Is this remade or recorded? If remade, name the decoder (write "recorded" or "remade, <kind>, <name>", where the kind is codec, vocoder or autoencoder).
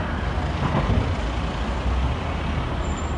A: recorded